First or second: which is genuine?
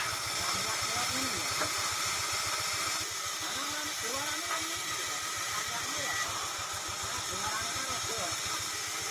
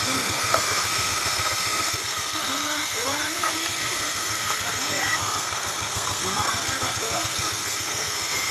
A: first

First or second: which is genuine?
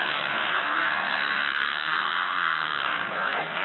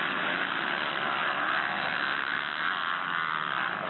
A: second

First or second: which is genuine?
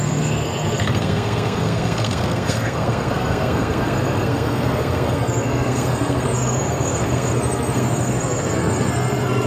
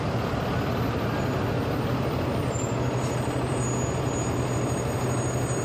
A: second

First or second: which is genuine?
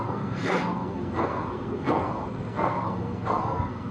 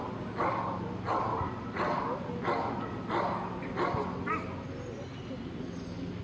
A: second